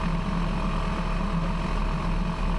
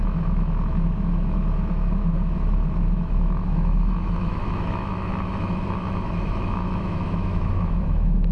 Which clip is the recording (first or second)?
first